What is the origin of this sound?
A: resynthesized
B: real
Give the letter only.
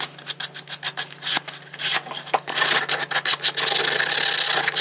B